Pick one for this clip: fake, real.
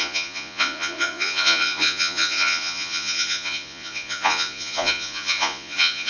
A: fake